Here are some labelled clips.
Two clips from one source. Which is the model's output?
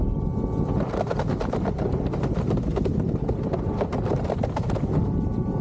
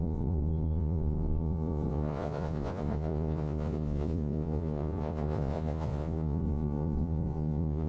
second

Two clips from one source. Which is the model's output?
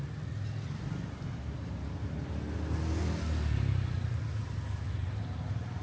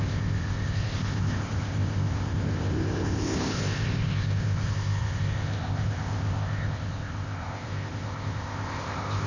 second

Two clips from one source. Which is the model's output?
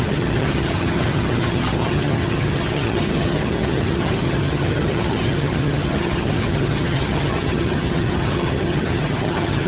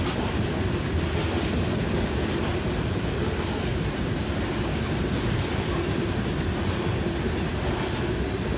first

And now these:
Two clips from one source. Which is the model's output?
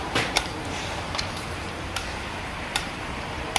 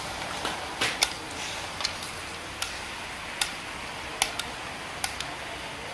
first